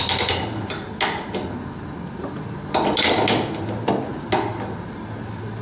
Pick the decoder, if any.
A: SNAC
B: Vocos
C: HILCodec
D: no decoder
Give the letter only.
D